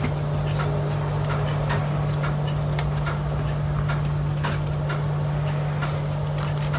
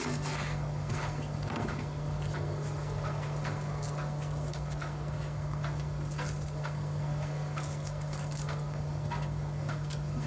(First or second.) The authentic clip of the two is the first